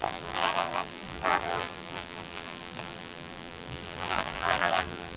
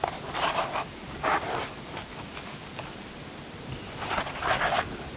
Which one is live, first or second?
second